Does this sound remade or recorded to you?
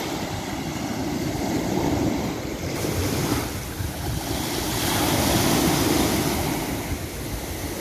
recorded